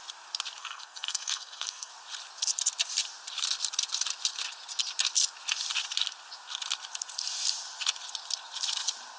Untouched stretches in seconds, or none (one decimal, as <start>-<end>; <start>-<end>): 0.0-0.6; 1.9-9.2